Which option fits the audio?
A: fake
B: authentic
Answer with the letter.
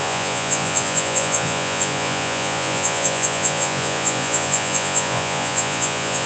A